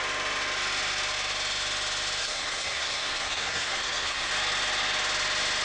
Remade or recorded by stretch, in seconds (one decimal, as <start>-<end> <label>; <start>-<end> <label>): 0.0-2.2 recorded; 2.2-4.3 remade; 4.3-5.6 recorded